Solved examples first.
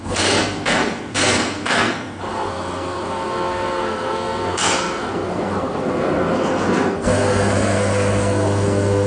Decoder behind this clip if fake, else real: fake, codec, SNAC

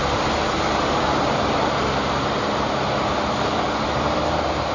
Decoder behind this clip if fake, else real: real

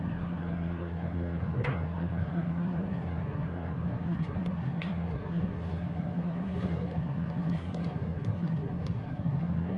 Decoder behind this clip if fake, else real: fake, codec, SNAC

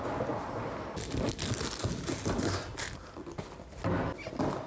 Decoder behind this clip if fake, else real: real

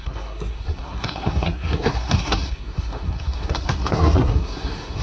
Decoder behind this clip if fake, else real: fake, codec, SNAC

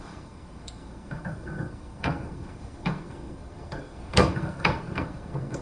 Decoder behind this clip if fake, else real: fake, codec, SNAC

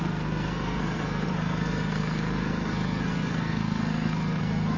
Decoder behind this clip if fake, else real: fake, codec, SNAC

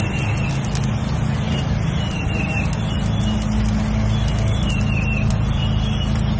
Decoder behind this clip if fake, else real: real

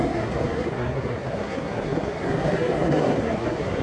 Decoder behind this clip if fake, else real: fake, codec, SNAC